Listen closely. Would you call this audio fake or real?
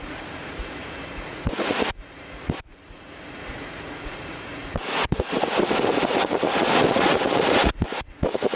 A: fake